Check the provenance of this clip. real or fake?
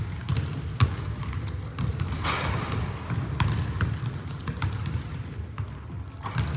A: real